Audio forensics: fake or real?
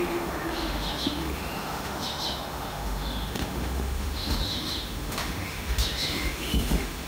fake